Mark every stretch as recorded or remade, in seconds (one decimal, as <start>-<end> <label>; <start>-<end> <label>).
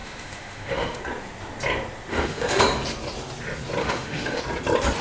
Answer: 0.0-1.0 remade; 1.0-2.1 recorded; 2.1-2.6 remade; 2.6-3.8 recorded; 3.8-4.4 remade; 4.4-5.0 recorded